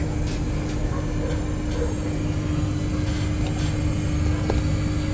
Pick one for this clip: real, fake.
real